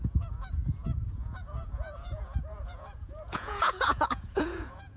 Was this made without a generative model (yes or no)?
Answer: no